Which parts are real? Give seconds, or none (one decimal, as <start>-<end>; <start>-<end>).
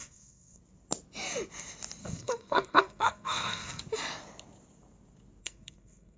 0.6-2.0; 3.8-5.4